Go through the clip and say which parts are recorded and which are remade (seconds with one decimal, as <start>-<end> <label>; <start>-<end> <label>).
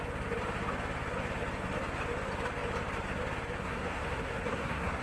0.0-3.6 recorded; 3.6-5.0 remade